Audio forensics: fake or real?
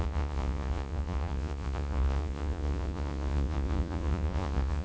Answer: fake